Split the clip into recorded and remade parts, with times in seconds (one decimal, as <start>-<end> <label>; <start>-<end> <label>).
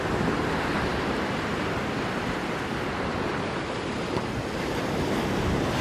0.0-5.8 recorded